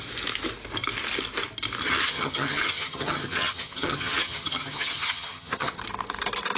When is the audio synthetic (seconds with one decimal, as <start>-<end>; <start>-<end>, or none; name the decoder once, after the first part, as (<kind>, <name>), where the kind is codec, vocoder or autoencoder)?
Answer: 1.8-5.8 (vocoder, HiFi-GAN)

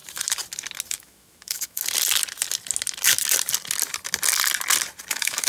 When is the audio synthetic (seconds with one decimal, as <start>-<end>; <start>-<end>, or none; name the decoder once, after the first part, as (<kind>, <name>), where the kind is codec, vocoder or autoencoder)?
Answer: 0.9-1.8 (autoencoder, DAC-VAE); 5.1-5.5